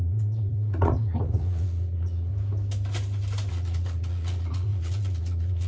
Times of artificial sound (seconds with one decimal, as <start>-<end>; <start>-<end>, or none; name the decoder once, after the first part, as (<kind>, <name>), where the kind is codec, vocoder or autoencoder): 0.0-2.3 (vocoder, Vocos); 3.5-5.7